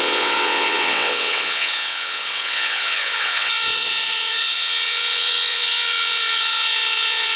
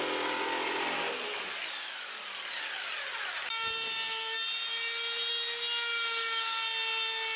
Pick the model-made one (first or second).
first